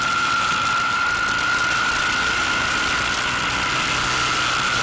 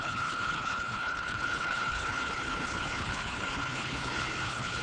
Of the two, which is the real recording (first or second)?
first